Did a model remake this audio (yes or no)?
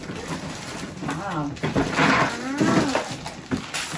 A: no